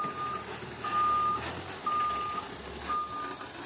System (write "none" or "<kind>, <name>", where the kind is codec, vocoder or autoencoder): none